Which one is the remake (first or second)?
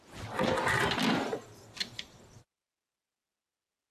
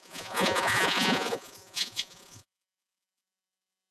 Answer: second